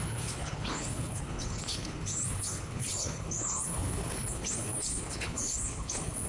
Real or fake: fake